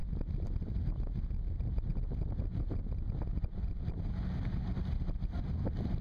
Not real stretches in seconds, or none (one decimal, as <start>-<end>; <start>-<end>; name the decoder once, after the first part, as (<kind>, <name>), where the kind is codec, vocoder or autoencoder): none